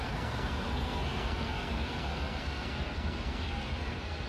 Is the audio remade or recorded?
remade